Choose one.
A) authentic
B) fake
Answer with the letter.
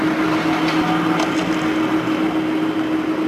A